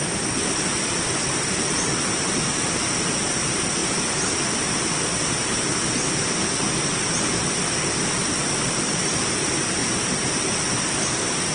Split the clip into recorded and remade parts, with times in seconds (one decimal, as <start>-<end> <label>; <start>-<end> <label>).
0.0-3.8 remade; 3.8-7.5 recorded; 7.5-9.8 remade; 9.8-11.5 recorded